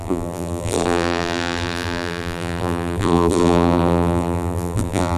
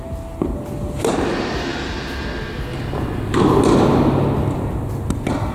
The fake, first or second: first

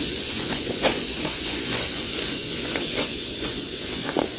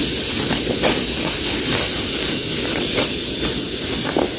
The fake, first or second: first